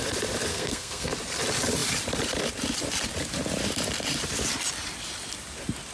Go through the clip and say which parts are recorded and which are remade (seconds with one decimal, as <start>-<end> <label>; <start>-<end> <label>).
0.0-0.5 recorded; 0.5-1.1 remade; 1.1-5.9 recorded